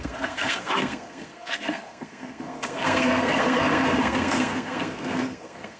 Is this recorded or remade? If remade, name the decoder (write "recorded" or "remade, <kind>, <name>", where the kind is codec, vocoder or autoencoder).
remade, codec, SNAC